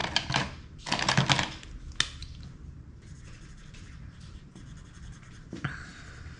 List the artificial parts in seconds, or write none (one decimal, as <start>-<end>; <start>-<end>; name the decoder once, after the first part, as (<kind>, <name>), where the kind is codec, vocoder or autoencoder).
2.2-6.0 (vocoder, BigVGAN v2)

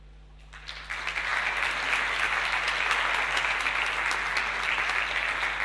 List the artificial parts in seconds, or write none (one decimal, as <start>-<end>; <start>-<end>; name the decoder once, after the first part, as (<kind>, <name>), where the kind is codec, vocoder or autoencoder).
none

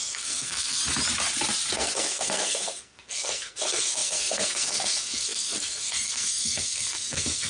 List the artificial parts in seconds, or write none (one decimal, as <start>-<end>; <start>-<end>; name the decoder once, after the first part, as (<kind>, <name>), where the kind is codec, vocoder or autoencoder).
0.0-0.8 (codec, SNAC); 1.7-7.5

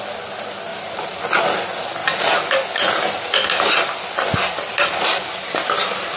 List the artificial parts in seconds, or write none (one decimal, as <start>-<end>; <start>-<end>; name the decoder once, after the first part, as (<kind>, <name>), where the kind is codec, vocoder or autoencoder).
none

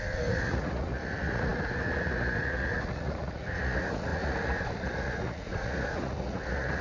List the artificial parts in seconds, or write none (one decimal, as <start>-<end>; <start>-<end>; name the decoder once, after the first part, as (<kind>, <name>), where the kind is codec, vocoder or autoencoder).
0.0-6.8 (vocoder, Vocos)